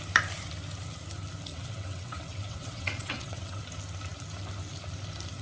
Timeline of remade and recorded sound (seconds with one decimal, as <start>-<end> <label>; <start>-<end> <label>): 0.0-1.5 recorded; 1.5-3.6 remade; 3.6-5.4 recorded